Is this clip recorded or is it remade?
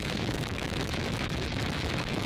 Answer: remade